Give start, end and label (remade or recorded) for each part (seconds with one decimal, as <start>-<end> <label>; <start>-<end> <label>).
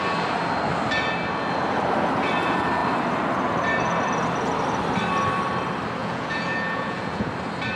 0.0-6.0 recorded; 6.0-7.3 remade; 7.3-7.8 recorded